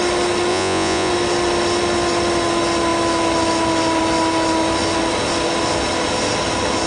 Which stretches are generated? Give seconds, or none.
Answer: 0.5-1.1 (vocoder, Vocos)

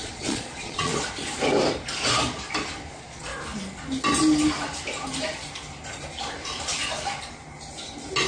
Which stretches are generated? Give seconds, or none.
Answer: 0.0-0.9 (vocoder, Vocos); 2.9-3.3

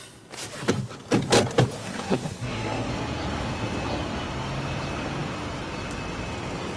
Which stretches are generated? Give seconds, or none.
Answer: 1.8-2.9 (codec, SNAC)

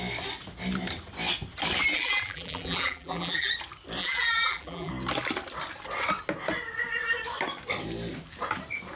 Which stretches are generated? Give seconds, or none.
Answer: 1.9-3.5 (vocoder, BigVGAN v2); 4.0-4.9

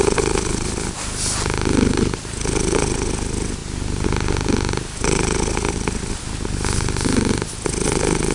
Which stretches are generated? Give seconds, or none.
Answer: none